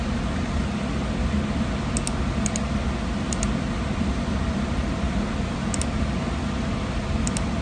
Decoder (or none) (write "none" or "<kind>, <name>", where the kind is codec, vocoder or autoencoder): none